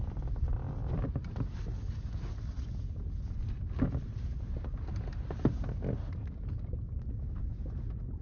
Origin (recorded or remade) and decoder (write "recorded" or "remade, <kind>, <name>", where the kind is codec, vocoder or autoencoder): recorded